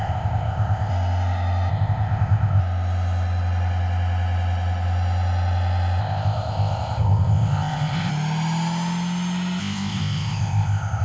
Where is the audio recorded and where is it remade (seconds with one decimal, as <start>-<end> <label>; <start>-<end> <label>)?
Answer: 0.0-0.9 remade; 0.9-1.7 recorded; 1.7-2.6 remade; 2.6-6.0 recorded; 6.0-8.1 remade; 8.1-9.6 recorded; 9.6-11.0 remade